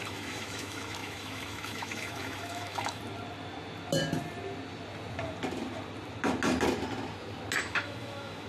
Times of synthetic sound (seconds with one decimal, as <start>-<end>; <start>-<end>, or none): 0.0-3.0; 7.6-8.5